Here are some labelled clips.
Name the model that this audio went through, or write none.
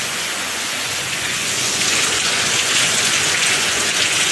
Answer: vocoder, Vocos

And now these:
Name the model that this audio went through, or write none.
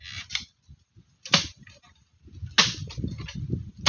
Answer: none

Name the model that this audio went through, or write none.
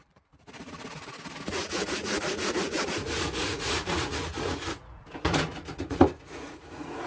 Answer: vocoder, Vocos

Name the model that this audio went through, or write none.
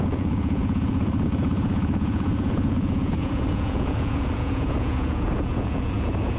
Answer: vocoder, Vocos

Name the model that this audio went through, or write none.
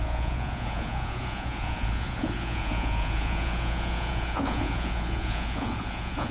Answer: vocoder, Vocos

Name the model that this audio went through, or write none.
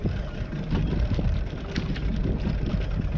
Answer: none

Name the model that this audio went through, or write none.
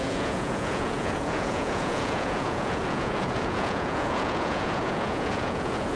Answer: vocoder, Vocos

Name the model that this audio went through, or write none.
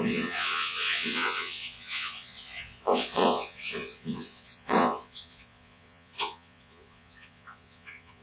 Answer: vocoder, Vocos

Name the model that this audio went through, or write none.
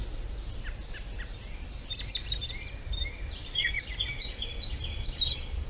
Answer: none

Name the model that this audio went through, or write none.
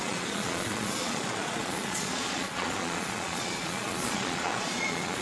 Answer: vocoder, Vocos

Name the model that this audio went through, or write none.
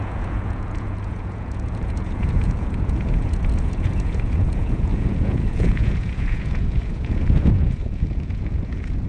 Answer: vocoder, Vocos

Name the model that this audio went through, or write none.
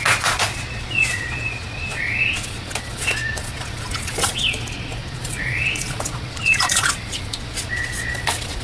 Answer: vocoder, Vocos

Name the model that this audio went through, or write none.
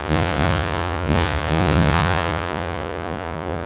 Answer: vocoder, Vocos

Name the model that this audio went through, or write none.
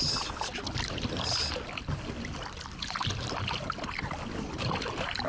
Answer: none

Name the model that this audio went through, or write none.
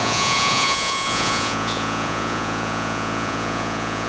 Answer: vocoder, Vocos